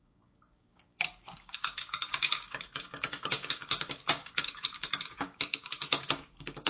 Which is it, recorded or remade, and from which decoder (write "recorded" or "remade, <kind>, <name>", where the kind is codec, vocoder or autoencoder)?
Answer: remade, codec, DAC